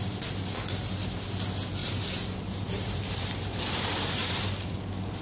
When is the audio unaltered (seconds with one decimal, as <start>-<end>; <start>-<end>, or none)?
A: 0.0-1.8; 4.4-5.2